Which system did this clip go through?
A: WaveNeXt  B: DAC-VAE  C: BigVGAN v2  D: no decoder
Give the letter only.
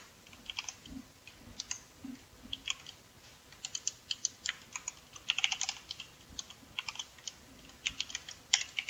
D